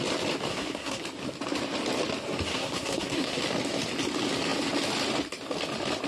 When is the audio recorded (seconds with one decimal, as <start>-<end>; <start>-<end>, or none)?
0.0-0.5; 1.0-2.5; 3.4-6.1